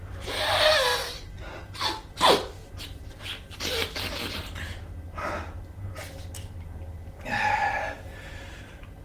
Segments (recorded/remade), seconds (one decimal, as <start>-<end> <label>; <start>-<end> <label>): 0.0-9.0 recorded